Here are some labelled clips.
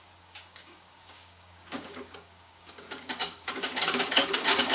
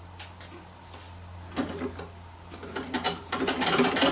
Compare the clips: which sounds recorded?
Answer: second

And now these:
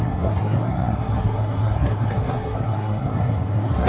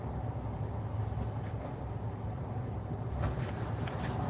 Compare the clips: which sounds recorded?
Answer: second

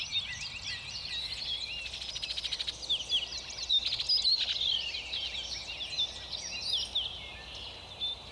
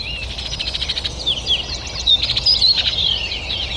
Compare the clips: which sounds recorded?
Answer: first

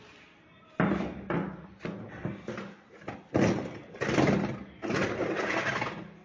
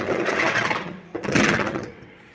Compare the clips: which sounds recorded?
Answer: first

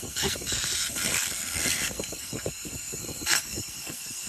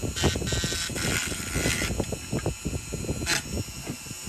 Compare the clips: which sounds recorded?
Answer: second